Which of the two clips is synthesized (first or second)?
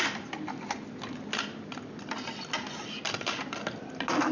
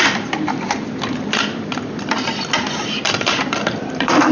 second